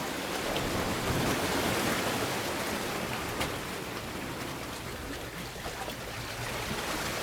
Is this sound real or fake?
real